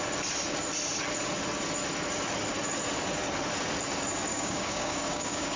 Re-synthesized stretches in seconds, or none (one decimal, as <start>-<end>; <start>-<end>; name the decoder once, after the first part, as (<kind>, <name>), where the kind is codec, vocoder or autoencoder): 4.3-5.6 (codec, DAC)